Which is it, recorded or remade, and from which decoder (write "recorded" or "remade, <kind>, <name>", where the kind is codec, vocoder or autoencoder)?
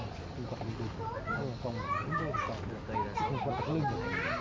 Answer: recorded